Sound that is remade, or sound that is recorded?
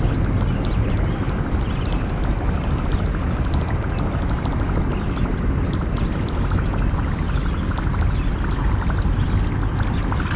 recorded